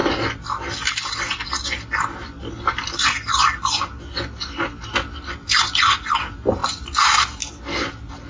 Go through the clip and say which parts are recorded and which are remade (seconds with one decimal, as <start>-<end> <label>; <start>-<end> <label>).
0.0-8.3 recorded